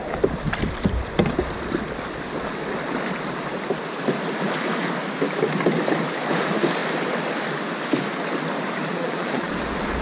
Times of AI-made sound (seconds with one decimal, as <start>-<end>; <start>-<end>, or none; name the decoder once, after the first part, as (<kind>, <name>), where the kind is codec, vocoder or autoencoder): 8.9-9.5 (vocoder, Vocos)